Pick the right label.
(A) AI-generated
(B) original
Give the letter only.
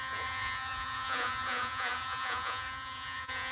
A